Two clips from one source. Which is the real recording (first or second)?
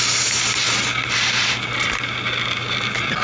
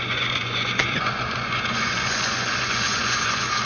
first